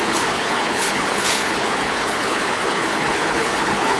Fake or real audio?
fake